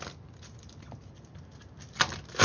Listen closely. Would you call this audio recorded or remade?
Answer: recorded